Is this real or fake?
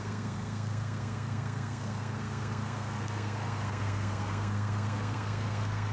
fake